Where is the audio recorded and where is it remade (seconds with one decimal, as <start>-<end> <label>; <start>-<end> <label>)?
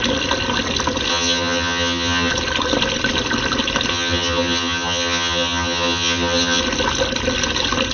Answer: 0.0-1.1 recorded; 1.1-2.3 remade; 2.3-3.9 recorded; 3.9-6.6 remade; 6.6-7.9 recorded